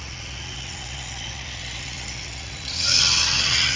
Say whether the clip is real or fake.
fake